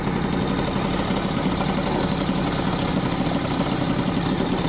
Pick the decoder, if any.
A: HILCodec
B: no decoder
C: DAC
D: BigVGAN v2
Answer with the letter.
B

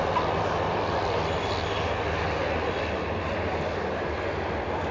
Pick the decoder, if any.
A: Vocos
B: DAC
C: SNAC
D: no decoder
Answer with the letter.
D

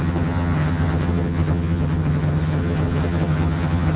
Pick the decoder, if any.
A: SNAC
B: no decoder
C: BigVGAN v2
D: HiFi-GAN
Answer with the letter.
D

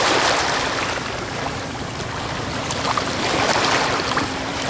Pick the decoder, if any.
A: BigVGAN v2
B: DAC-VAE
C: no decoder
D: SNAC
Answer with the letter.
A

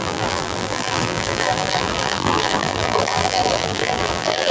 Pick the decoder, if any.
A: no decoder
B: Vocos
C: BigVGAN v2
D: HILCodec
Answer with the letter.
C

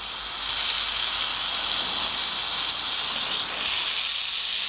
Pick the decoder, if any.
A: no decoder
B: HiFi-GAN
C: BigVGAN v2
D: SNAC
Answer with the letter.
A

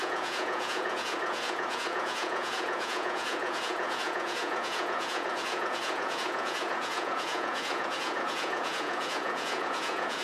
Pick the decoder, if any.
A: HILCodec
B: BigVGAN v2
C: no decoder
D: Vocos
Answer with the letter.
D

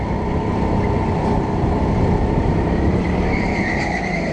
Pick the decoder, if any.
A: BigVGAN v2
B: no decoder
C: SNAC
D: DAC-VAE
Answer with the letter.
A